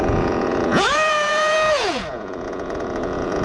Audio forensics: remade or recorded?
remade